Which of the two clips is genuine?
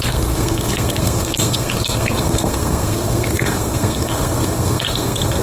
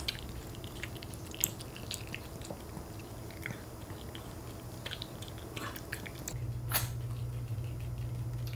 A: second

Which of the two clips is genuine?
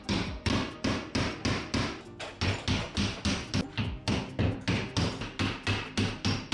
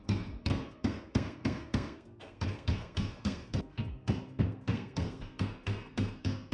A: first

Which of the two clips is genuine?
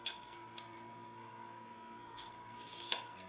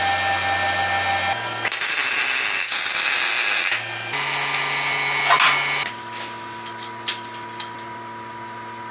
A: second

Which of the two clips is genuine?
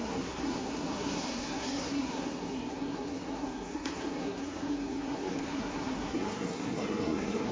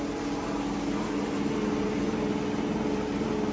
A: second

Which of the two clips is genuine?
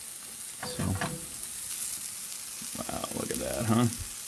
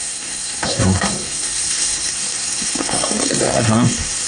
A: first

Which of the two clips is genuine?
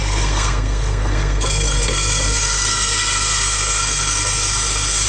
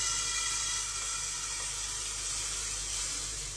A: second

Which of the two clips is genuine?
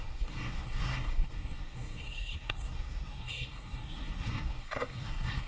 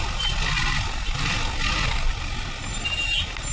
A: second